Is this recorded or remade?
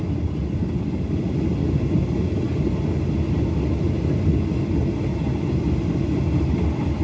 recorded